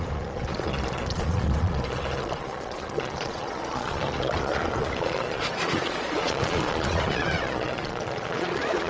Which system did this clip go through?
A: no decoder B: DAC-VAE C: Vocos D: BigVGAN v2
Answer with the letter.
C